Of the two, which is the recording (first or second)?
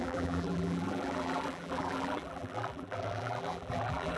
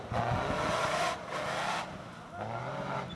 second